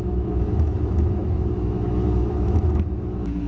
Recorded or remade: remade